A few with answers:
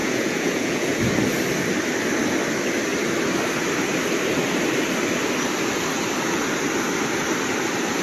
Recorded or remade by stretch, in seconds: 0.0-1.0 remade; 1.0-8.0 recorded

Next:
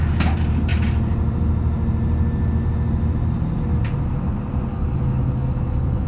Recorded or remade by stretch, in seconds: 0.0-4.7 recorded; 4.7-6.1 remade

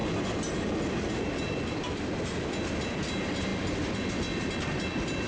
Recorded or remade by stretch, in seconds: 0.0-5.3 recorded

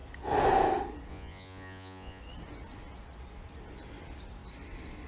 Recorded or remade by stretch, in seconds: 0.0-1.1 recorded; 1.1-2.2 remade; 2.2-5.1 recorded